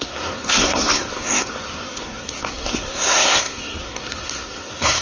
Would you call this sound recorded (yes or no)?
no